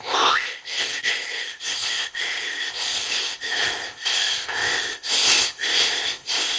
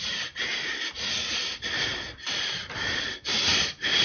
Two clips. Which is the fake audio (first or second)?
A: first